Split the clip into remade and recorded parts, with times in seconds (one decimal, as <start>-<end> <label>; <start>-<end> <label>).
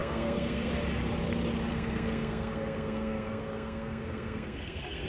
0.0-0.7 remade; 0.7-1.7 recorded; 1.7-5.1 remade